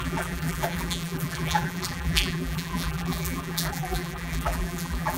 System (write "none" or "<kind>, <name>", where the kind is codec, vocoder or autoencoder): vocoder, BigVGAN v2